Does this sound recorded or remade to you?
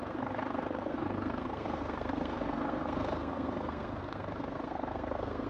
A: remade